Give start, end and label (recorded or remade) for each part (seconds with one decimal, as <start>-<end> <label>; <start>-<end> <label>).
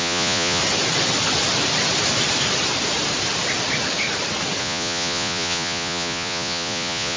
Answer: 0.0-0.6 remade; 0.6-4.6 recorded; 4.6-7.2 remade